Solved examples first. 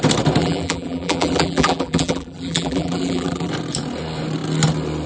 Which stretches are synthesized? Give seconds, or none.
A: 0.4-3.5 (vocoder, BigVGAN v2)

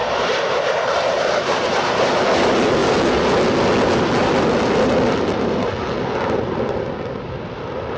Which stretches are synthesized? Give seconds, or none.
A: 0.0-2.1 (vocoder, BigVGAN v2)

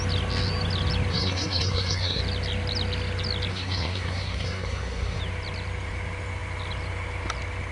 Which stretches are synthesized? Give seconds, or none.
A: 1.1-2.2 (codec, SNAC); 3.5-5.2

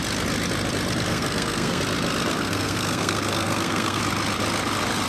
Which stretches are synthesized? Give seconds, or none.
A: 1.1-1.8 (codec, SNAC); 2.3-4.0